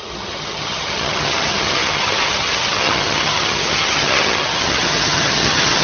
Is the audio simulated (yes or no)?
yes